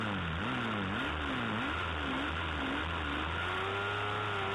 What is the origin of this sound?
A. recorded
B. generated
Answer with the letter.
A